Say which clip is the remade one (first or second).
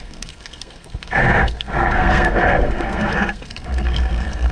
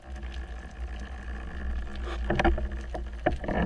first